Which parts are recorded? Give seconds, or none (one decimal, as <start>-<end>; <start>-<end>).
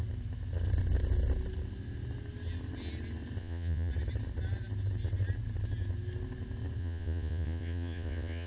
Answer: 0.0-3.4; 3.9-6.8